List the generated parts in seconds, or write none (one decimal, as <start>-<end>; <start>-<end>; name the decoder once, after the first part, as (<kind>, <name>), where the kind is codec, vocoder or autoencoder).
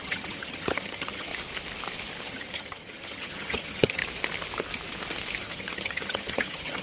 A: 0.0-1.3 (vocoder, HiFi-GAN); 2.2-4.0; 5.4-6.8